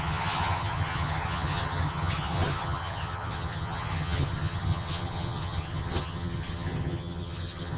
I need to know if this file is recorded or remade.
remade